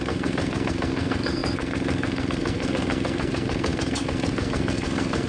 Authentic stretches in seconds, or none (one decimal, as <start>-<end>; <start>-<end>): none